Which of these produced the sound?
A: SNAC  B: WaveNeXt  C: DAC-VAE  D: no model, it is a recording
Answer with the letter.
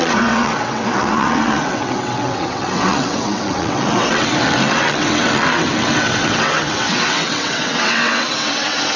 B